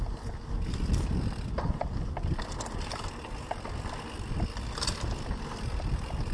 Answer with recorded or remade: recorded